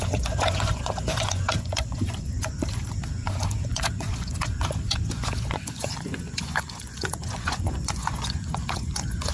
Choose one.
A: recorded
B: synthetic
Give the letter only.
B